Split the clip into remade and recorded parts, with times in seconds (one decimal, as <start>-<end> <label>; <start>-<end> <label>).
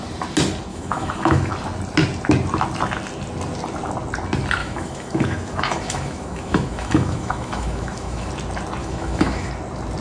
0.0-0.7 recorded; 0.7-1.5 remade; 1.5-4.6 recorded; 4.6-8.3 remade; 8.3-8.8 recorded; 8.8-9.5 remade; 9.5-10.0 recorded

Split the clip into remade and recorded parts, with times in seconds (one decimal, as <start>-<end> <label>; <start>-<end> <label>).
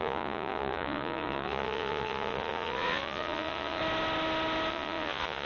0.0-3.8 remade; 3.8-4.7 recorded; 4.7-5.5 remade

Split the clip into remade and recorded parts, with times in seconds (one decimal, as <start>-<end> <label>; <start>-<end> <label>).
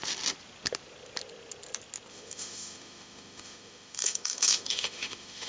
0.0-2.1 recorded; 2.1-5.5 remade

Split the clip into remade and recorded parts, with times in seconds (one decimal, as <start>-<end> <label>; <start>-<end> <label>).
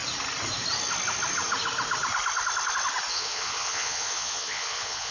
0.0-3.1 recorded; 3.1-5.1 remade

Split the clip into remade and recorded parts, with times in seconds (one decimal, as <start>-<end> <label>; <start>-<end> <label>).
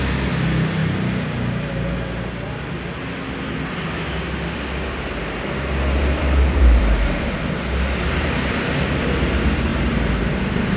0.0-6.0 recorded; 6.0-8.6 remade; 8.6-10.8 recorded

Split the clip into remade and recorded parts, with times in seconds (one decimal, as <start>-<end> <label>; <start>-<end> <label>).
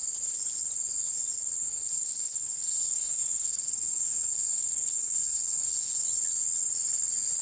0.0-1.7 recorded; 1.7-6.0 remade; 6.0-7.4 recorded